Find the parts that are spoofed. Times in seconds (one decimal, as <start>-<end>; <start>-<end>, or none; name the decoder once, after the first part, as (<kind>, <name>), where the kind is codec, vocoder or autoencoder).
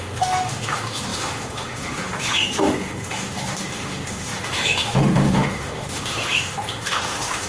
0.0-7.5 (autoencoder, DAC-VAE)